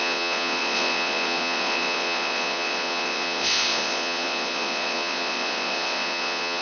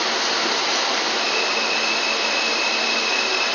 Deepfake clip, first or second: first